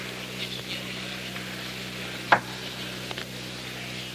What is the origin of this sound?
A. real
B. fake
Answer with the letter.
A